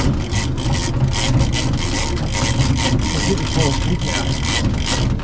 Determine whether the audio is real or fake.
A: real